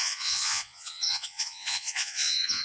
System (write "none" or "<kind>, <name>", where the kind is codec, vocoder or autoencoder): vocoder, Vocos